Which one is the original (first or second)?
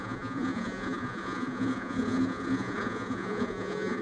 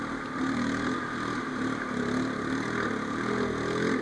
second